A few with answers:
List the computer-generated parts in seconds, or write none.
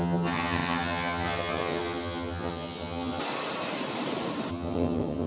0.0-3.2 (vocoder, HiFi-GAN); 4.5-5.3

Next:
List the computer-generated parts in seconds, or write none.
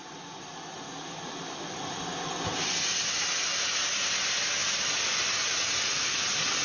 none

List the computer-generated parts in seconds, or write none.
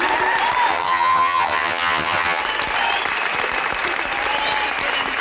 0.7-2.4 (vocoder, HiFi-GAN)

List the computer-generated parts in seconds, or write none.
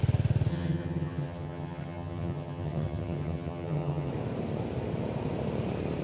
0.5-4.1 (vocoder, HiFi-GAN)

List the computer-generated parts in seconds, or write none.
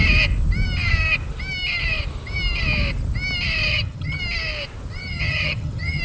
3.7-4.2 (vocoder, HiFi-GAN); 5.0-6.0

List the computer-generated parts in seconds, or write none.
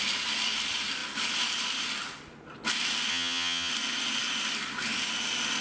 3.1-3.7 (vocoder, HiFi-GAN)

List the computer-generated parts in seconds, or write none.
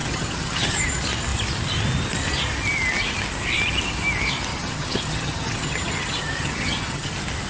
0.0-0.8 (vocoder, HiFi-GAN); 4.5-7.1